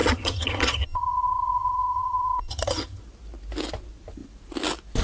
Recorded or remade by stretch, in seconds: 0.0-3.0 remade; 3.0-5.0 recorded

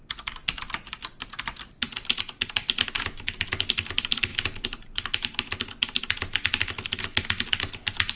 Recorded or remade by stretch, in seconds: 0.0-8.2 recorded